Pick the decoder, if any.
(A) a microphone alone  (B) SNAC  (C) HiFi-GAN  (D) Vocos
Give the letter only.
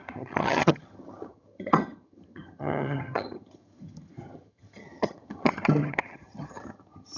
C